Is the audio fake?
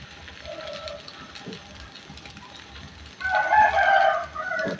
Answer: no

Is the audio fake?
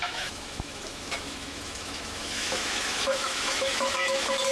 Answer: yes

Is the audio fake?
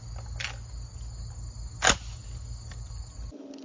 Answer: no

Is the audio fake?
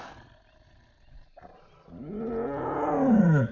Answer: no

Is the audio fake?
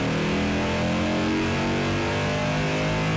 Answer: no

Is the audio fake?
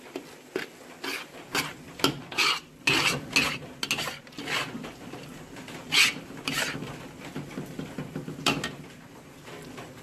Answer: no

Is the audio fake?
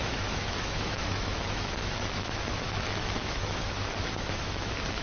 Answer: yes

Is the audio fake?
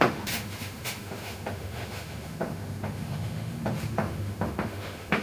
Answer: yes